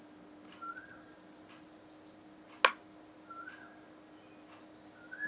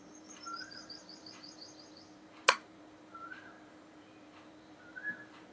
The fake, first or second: second